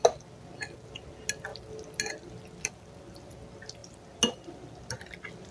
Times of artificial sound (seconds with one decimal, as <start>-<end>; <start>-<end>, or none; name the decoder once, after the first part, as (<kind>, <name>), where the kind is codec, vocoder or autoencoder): none